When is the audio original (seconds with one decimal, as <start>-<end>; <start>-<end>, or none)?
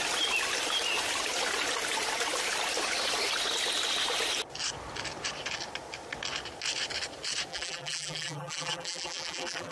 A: 0.0-7.5